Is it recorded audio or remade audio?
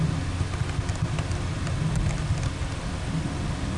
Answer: recorded